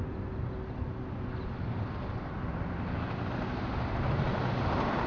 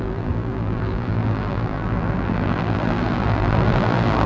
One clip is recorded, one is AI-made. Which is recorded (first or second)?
first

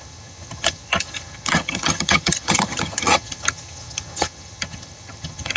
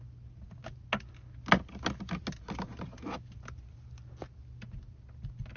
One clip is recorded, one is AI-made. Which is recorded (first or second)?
second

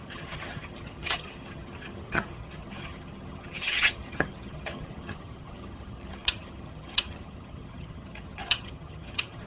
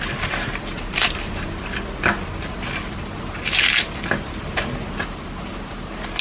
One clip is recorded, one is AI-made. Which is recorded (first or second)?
second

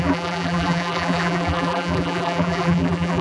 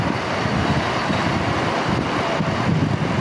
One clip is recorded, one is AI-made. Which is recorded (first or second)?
second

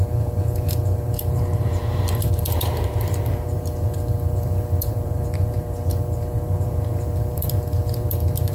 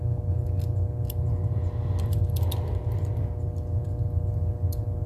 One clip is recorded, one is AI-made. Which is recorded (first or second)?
second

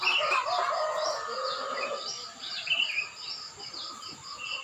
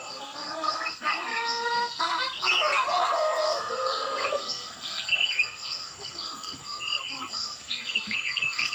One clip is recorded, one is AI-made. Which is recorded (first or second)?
first